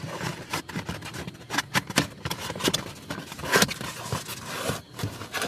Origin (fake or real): real